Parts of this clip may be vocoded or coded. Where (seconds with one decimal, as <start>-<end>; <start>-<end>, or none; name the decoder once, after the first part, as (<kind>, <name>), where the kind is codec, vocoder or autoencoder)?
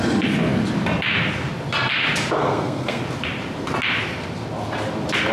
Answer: 2.4-3.0 (codec, SNAC)